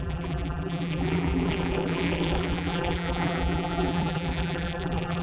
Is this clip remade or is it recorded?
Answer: remade